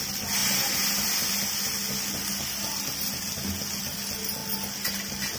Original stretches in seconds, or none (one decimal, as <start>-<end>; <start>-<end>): 0.0-0.4; 1.3-5.4

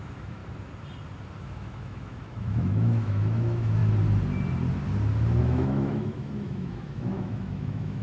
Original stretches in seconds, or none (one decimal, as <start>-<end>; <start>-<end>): 0.4-1.4; 3.8-5.4

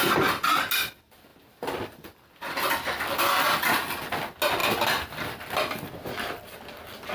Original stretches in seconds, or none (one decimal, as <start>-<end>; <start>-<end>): 0.0-1.3; 4.1-4.6; 5.4-7.1

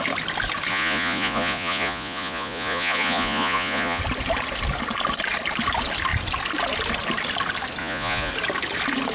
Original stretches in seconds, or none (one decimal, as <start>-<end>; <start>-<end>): 0.0-0.7; 4.0-7.8; 8.3-9.1

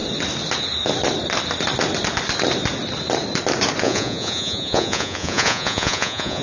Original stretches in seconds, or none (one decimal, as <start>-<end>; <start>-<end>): 0.0-3.8

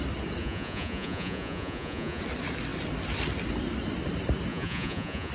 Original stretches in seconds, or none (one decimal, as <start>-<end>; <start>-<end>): 0.0-0.4; 2.2-4.5